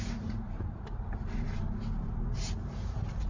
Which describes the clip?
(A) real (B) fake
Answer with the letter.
B